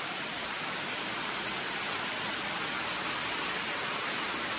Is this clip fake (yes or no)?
no